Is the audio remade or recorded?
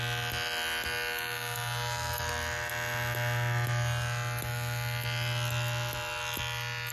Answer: recorded